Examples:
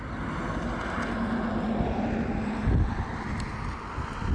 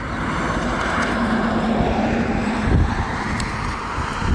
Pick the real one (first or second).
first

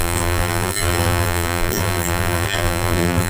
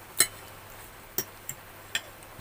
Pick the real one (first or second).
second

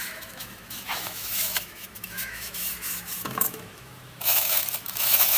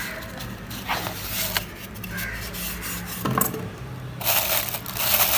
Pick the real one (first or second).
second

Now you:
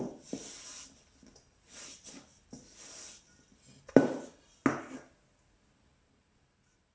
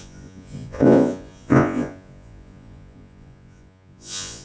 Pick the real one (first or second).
first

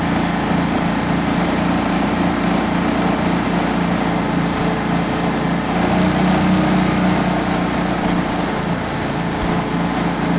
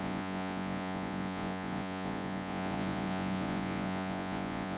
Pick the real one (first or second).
first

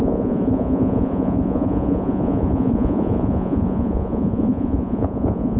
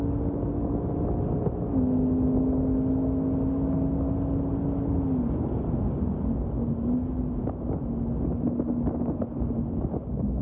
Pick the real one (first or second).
second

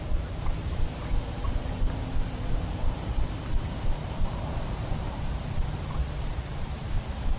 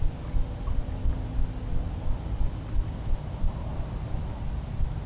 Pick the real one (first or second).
second